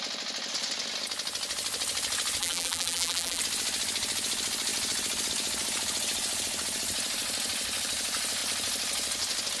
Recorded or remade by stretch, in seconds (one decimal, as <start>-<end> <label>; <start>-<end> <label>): 0.0-2.4 recorded; 2.4-3.4 remade; 3.4-9.6 recorded